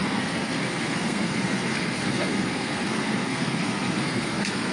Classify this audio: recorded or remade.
remade